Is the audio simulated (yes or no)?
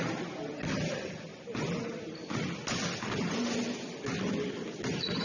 no